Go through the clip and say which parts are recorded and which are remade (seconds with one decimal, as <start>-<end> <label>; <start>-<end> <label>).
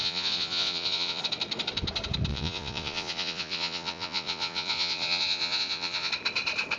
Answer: 0.0-1.2 remade; 1.2-2.3 recorded; 2.3-6.1 remade; 6.1-6.8 recorded